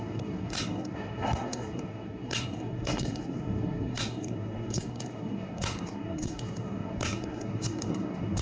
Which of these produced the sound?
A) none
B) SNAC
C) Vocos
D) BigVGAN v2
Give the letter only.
B